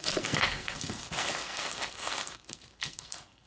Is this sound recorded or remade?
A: remade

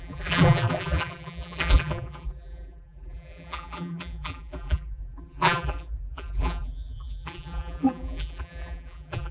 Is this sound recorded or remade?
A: remade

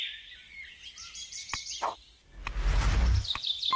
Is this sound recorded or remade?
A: recorded